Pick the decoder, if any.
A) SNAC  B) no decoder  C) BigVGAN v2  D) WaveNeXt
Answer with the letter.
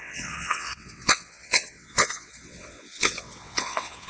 D